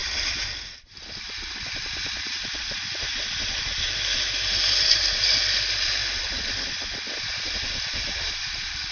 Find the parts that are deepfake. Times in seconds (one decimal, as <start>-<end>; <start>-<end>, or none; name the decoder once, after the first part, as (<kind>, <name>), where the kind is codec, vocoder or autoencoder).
none

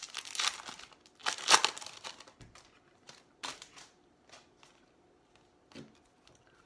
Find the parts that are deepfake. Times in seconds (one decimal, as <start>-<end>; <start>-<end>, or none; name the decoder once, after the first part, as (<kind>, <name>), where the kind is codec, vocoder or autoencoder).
none

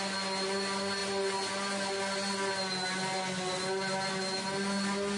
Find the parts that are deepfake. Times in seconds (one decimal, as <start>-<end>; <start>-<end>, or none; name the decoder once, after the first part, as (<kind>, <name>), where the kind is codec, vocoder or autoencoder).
none